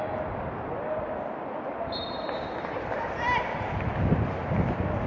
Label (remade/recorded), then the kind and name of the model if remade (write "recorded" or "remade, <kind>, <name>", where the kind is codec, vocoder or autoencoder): recorded